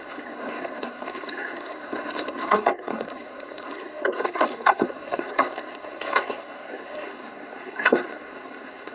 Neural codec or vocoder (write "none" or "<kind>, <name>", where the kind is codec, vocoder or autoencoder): codec, SNAC